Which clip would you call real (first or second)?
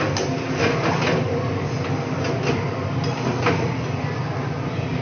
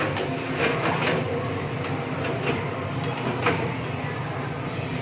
first